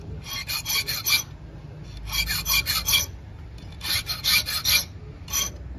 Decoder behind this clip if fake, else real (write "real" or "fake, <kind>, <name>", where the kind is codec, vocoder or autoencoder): real